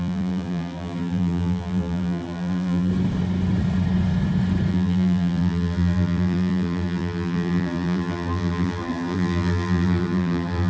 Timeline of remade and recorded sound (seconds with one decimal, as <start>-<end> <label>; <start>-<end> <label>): 0.0-2.9 remade; 2.9-4.7 recorded; 4.7-10.7 remade